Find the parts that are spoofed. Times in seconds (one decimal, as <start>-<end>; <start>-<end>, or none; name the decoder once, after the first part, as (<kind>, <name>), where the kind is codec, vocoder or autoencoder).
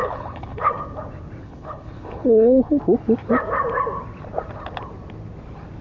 0.0-0.7 (codec, HILCodec); 1.4-2.8